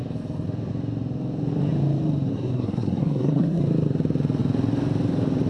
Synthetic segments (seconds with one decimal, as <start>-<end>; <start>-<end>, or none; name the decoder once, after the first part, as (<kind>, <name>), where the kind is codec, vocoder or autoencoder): 2.3-3.6 (codec, SNAC)